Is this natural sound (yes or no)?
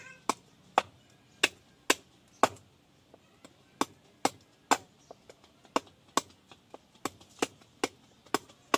yes